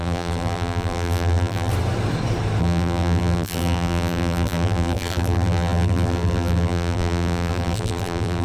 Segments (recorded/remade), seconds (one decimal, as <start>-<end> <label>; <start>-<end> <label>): 0.0-1.7 remade; 1.7-2.6 recorded; 2.6-8.4 remade